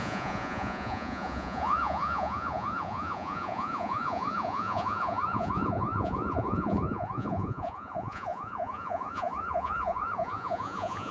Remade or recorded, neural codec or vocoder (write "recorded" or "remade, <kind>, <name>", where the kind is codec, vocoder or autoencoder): remade, vocoder, Vocos